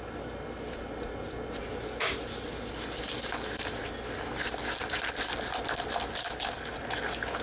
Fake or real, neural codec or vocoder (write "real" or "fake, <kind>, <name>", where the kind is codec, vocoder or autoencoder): real